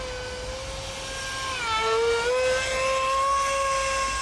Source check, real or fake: real